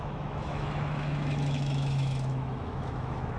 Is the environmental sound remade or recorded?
remade